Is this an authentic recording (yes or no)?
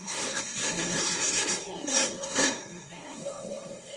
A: no